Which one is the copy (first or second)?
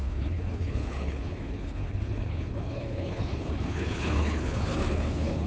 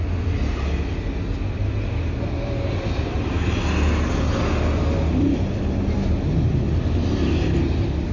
first